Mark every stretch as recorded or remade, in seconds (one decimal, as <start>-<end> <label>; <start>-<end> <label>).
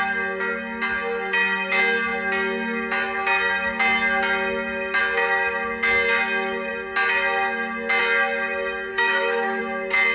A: 0.0-8.9 recorded; 8.9-9.6 remade; 9.6-10.1 recorded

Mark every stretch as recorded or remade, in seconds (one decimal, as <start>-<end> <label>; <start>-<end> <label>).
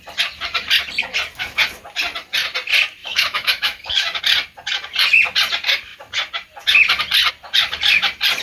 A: 0.0-3.0 recorded; 3.0-4.2 remade; 4.2-8.4 recorded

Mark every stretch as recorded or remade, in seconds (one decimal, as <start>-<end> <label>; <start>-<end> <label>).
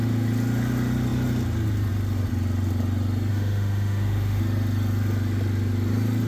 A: 0.0-3.3 recorded; 3.3-4.4 remade; 4.4-6.3 recorded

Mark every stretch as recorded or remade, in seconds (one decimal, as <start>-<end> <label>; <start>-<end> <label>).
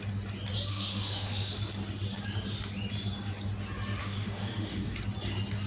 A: 0.0-0.7 recorded; 0.7-1.5 remade; 1.5-4.0 recorded; 4.0-5.0 remade; 5.0-5.7 recorded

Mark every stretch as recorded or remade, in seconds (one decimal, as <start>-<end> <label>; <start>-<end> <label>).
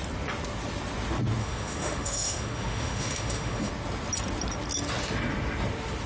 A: 0.0-1.4 recorded; 1.4-3.7 remade; 3.7-6.1 recorded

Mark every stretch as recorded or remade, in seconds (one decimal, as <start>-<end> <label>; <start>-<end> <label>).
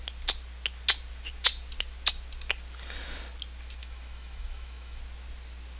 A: 0.0-3.8 recorded; 3.8-5.0 remade; 5.0-5.8 recorded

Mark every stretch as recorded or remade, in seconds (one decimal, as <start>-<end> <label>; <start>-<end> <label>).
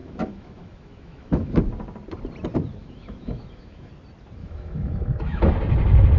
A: 0.0-1.6 remade; 1.6-2.8 recorded; 2.8-3.9 remade; 3.9-4.4 recorded; 4.4-5.5 remade; 5.5-6.2 recorded